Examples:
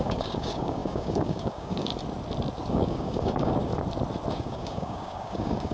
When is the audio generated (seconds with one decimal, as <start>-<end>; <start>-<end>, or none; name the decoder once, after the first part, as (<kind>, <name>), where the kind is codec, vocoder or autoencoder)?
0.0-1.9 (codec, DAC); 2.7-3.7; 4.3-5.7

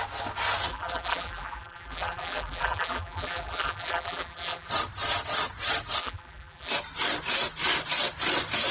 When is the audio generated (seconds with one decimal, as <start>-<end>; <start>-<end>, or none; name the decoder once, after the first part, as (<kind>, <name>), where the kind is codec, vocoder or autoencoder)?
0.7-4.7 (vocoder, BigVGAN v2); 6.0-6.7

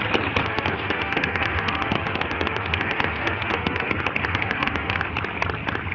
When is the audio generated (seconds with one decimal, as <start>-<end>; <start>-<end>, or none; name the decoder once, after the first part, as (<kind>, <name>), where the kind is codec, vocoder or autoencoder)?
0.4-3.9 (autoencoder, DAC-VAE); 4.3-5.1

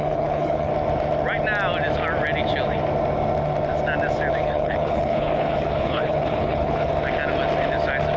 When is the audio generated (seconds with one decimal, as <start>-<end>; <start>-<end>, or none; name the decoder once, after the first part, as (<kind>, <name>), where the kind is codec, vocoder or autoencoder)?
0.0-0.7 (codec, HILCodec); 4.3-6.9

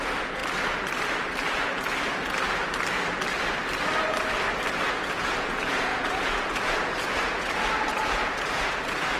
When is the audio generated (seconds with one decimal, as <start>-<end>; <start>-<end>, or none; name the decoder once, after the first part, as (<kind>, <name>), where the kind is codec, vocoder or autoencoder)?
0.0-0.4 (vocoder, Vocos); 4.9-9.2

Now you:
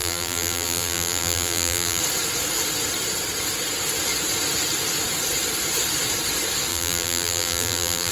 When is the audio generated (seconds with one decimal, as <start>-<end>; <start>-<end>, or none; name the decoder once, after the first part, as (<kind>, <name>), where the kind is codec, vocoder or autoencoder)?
0.0-2.0 (vocoder, BigVGAN v2); 6.7-8.1

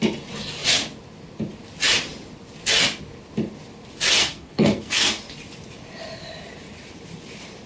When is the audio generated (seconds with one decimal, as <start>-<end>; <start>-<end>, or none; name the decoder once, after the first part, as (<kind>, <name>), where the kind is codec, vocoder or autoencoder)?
4.2-5.2 (codec, SNAC)